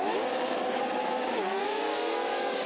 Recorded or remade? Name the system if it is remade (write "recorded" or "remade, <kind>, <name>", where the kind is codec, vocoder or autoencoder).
remade, codec, DAC